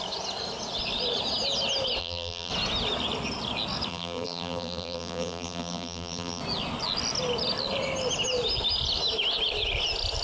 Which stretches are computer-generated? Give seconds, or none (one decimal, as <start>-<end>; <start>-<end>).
2.0-2.5; 3.9-6.4